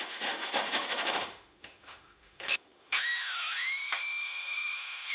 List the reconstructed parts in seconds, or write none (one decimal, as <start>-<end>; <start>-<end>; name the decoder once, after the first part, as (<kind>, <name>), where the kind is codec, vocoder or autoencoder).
0.0-5.1 (autoencoder, DAC-VAE)